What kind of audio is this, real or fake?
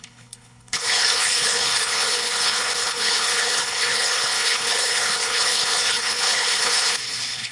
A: fake